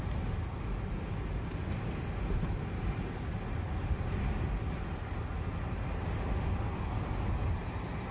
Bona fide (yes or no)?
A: yes